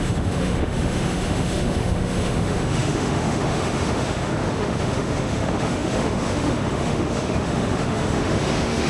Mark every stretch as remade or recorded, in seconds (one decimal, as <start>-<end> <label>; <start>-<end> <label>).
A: 0.0-8.9 remade